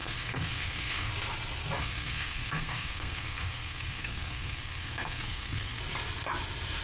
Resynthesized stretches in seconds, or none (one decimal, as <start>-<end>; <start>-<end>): 0.0-1.1; 1.8-5.8